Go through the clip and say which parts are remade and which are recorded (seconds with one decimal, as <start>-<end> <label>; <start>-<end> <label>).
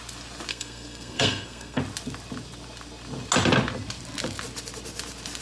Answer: 0.0-0.5 recorded; 0.5-1.8 remade; 1.8-5.4 recorded